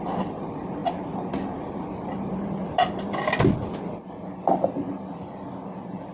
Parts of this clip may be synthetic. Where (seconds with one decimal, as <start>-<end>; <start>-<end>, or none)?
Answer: none